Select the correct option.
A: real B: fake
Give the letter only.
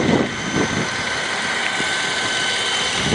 A